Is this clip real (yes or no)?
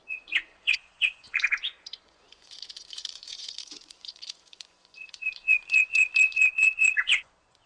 no